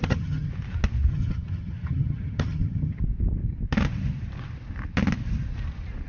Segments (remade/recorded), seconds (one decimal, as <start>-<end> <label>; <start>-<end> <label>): 0.0-0.5 remade; 0.5-1.1 recorded; 1.1-3.0 remade; 3.0-6.1 recorded